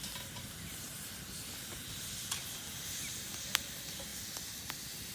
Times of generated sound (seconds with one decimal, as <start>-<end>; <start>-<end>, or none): none